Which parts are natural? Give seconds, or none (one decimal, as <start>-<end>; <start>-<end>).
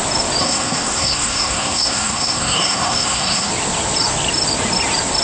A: 0.0-0.4; 3.5-5.2